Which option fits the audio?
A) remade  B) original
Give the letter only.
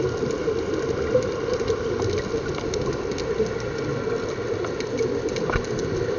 B